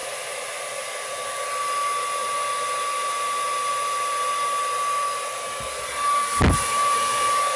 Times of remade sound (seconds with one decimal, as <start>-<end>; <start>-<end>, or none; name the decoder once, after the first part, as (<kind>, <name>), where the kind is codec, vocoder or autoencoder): none